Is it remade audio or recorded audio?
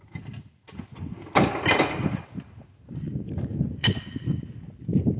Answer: recorded